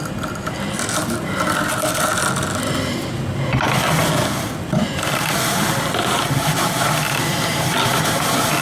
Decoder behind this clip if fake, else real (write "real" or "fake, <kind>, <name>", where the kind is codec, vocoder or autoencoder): real